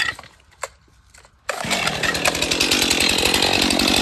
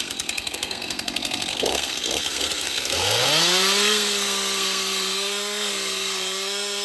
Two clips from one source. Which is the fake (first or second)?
second